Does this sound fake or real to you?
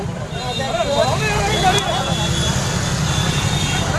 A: real